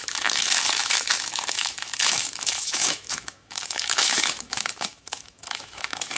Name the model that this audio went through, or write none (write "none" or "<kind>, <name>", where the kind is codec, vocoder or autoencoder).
autoencoder, DAC-VAE